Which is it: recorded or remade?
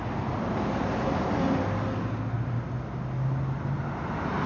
recorded